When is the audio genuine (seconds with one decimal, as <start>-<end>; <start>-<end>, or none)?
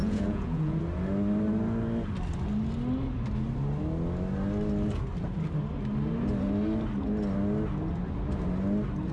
0.8-9.1